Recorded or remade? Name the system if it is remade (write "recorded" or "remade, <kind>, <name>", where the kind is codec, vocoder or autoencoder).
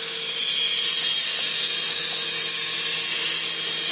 recorded